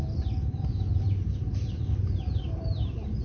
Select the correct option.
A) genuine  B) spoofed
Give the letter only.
A